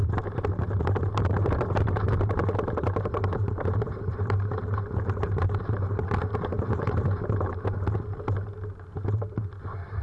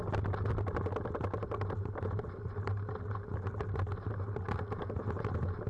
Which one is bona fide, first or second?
second